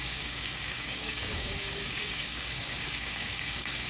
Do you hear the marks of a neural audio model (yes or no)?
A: yes